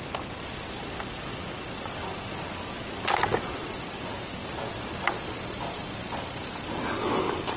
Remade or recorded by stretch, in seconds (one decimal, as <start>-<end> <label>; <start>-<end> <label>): 0.0-7.6 recorded